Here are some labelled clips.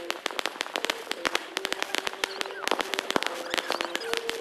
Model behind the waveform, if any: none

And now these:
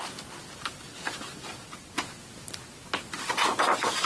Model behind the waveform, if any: none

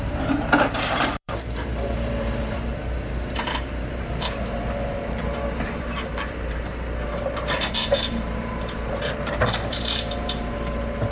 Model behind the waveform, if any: vocoder, BigVGAN v2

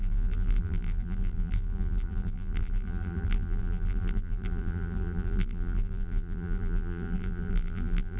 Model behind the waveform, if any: vocoder, BigVGAN v2